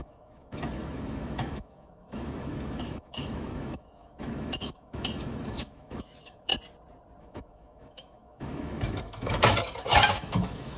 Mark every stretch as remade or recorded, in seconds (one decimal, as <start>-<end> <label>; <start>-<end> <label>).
0.0-6.5 remade; 6.5-7.2 recorded; 7.2-10.8 remade

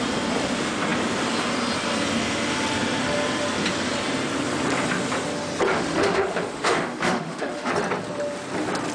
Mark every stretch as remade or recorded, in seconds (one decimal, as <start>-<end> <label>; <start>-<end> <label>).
0.0-5.7 recorded; 5.7-7.7 remade; 7.7-8.9 recorded

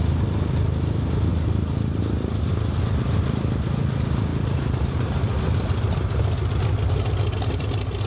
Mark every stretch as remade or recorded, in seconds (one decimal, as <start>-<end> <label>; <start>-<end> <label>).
0.0-8.1 recorded

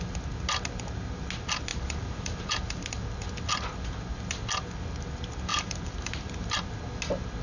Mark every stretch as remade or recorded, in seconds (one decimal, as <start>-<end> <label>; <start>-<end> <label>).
0.0-1.7 recorded; 1.7-2.5 remade; 2.5-5.5 recorded; 5.5-6.7 remade; 6.7-7.4 recorded

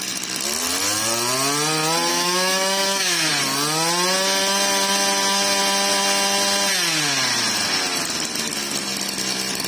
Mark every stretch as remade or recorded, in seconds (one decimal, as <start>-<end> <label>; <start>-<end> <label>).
0.0-2.1 recorded; 2.1-3.3 remade; 3.3-9.7 recorded

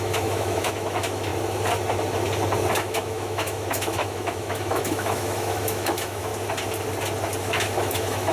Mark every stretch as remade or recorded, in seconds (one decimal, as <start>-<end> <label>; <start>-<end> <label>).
0.0-1.3 remade; 1.3-2.7 recorded; 2.7-6.3 remade; 6.3-7.4 recorded; 7.4-8.3 remade

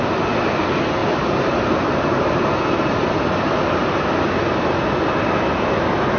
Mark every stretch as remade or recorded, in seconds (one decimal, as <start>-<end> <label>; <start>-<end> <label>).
0.0-1.0 recorded; 1.0-3.5 remade; 3.5-6.2 recorded

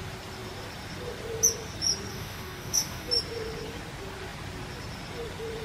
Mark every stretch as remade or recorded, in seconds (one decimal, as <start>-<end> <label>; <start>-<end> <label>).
0.0-2.1 recorded; 2.1-3.1 remade; 3.1-5.6 recorded